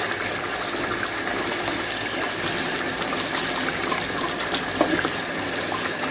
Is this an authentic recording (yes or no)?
yes